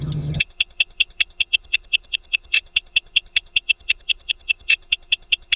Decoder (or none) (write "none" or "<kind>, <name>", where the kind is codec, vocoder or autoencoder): vocoder, HiFi-GAN